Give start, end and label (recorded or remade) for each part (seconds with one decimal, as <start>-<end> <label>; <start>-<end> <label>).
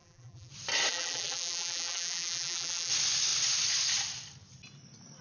0.0-0.5 remade; 0.5-0.9 recorded; 0.9-2.9 remade; 2.9-5.2 recorded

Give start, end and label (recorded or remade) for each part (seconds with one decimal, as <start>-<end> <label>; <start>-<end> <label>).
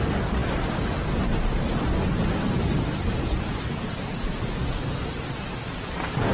0.0-6.3 recorded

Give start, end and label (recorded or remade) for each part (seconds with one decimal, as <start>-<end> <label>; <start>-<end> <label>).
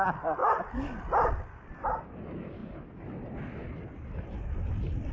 0.0-5.1 recorded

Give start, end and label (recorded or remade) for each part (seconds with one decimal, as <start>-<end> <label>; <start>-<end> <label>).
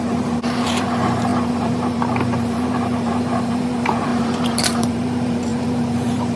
0.0-6.4 remade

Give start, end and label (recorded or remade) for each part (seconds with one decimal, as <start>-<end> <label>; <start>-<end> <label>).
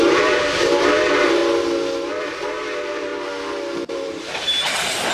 0.0-1.4 remade; 1.4-2.2 recorded; 2.2-3.1 remade; 3.1-3.9 recorded; 3.9-5.1 remade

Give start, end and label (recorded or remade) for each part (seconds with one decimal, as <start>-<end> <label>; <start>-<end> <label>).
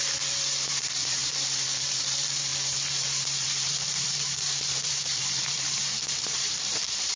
0.0-7.2 remade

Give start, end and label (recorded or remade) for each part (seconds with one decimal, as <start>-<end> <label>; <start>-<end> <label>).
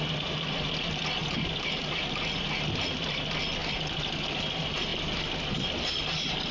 0.0-6.5 recorded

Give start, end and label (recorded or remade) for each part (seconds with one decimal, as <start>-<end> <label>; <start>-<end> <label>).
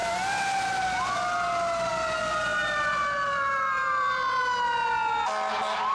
0.0-2.5 recorded; 2.5-4.4 remade; 4.4-5.9 recorded